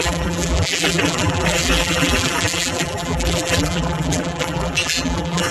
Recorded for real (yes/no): no